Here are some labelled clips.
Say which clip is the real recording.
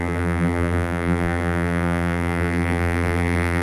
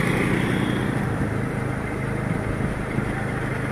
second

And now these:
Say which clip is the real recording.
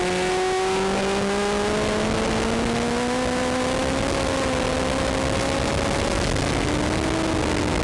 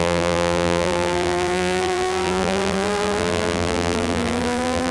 first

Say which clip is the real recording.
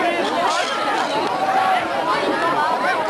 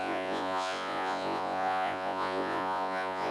first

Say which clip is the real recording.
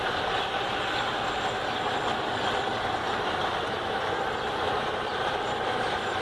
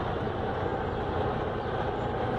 second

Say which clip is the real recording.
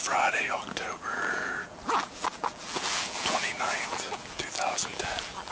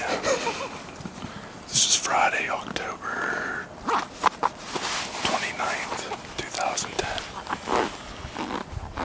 second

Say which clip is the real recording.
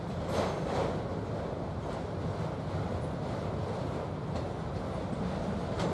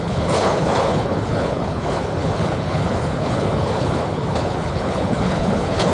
first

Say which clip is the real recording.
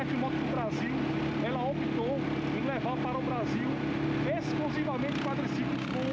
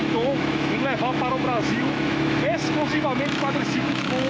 first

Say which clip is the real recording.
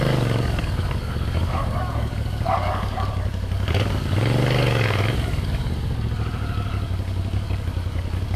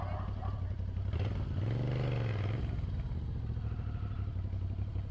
second